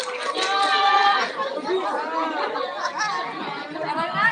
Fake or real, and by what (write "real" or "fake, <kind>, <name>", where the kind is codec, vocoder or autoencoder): real